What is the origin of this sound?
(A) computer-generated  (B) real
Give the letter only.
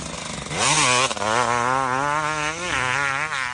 B